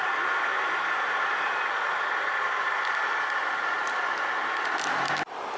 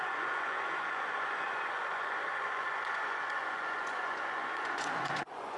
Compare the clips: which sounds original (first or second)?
first